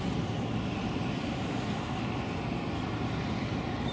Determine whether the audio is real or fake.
real